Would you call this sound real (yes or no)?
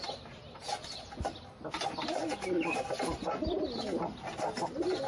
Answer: yes